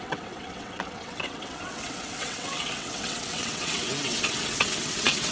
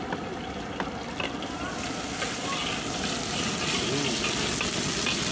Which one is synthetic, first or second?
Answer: first